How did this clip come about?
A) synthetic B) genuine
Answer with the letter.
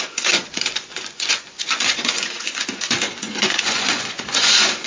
A